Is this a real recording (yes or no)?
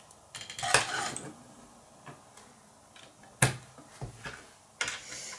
yes